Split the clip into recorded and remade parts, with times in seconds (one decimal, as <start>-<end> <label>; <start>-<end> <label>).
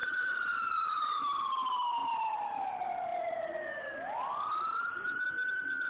0.0-1.2 remade; 1.2-5.9 recorded